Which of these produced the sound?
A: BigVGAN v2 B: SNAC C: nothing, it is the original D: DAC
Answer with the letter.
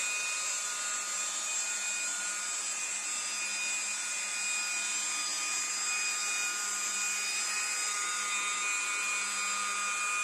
C